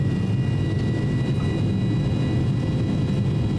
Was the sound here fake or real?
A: real